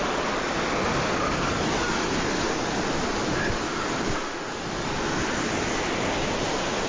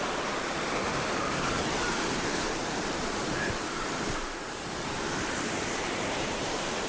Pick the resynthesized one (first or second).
second